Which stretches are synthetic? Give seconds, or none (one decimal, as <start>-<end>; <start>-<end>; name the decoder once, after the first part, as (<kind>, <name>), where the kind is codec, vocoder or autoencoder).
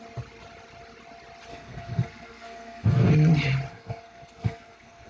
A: 1.5-3.1 (codec, SNAC); 3.7-5.1